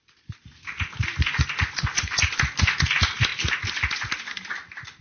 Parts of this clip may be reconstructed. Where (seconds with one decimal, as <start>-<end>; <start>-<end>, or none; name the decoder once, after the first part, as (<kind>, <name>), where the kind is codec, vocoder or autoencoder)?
none